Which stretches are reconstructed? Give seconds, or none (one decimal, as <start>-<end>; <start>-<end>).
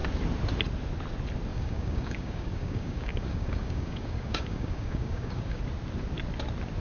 1.5-5.6